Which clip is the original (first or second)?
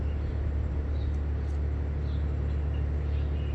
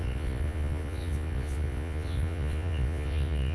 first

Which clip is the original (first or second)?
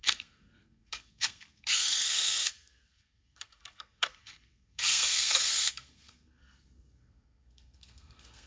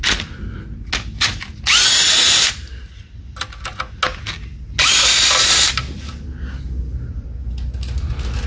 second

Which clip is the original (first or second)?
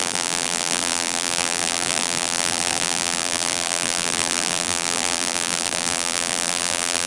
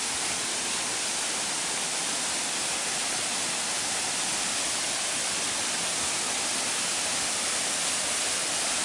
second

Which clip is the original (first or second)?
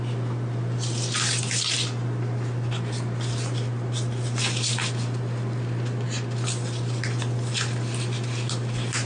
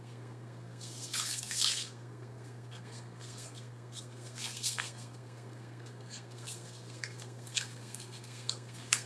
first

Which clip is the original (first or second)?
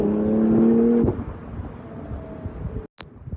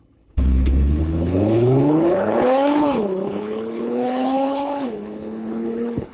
first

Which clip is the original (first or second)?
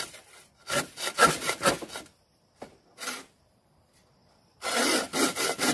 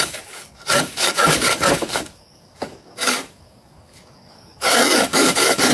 first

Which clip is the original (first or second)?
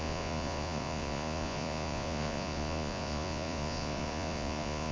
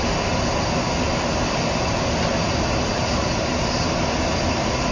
second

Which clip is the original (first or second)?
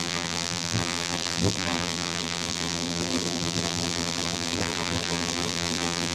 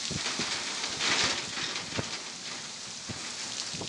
second